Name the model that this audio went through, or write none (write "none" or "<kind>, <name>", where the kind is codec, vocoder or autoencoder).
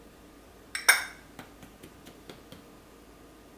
none